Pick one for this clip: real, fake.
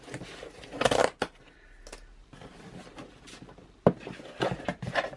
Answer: real